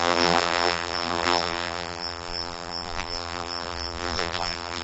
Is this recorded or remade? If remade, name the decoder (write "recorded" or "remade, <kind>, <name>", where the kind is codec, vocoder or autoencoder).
remade, vocoder, BigVGAN v2